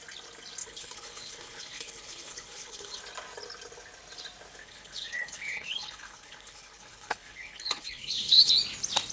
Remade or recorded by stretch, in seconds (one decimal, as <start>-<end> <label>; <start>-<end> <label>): 0.0-0.6 recorded; 0.6-3.0 remade; 3.0-4.6 recorded; 4.6-8.5 remade; 8.5-9.1 recorded